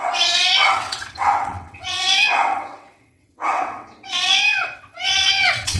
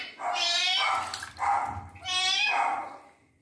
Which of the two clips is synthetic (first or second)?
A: first